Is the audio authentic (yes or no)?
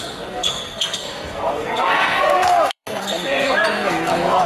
no